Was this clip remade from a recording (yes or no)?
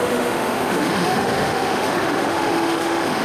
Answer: yes